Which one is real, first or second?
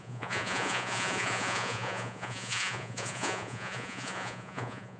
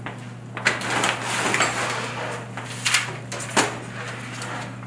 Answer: second